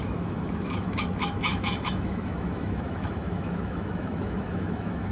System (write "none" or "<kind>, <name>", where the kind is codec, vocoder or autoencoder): autoencoder, DAC-VAE